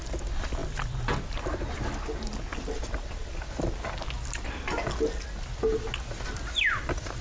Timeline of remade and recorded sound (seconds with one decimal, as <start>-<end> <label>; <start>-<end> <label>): 0.0-7.2 recorded